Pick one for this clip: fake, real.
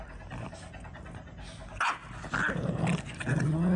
real